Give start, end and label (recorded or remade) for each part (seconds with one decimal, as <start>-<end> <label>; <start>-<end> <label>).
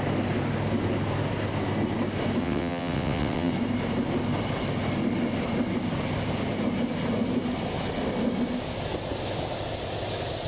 0.0-2.4 recorded; 2.4-3.5 remade; 3.5-10.5 recorded